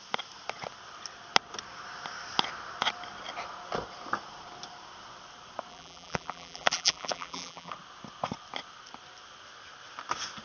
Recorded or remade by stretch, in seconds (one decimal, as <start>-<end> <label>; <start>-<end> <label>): 0.0-5.7 recorded; 5.7-7.7 remade; 7.7-10.4 recorded

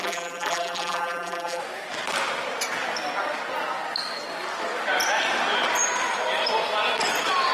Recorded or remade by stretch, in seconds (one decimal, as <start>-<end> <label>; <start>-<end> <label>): 0.0-1.6 remade; 1.6-7.5 recorded

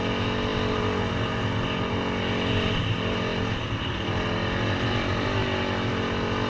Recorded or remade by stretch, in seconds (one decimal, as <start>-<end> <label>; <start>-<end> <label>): 0.0-6.5 recorded

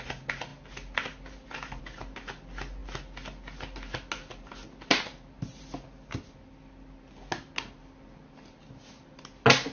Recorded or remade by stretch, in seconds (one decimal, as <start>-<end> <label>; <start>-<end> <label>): 0.0-9.7 recorded